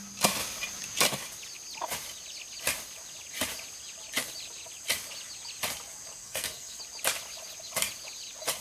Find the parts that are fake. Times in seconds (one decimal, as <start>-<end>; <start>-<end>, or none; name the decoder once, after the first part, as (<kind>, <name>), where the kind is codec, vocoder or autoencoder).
6.2-6.8 (codec, SNAC)